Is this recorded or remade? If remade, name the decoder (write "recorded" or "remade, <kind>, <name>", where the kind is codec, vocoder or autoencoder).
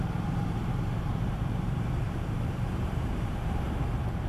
remade, vocoder, BigVGAN v2